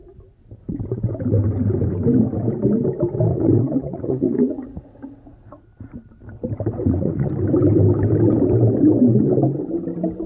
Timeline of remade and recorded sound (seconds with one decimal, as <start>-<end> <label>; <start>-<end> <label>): 0.0-3.3 recorded; 3.3-5.8 remade; 5.8-6.8 recorded; 6.8-7.3 remade; 7.3-10.3 recorded